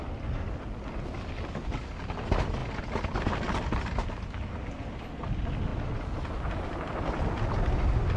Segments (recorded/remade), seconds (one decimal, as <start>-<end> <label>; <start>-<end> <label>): 0.0-5.7 recorded; 5.7-7.0 remade; 7.0-8.2 recorded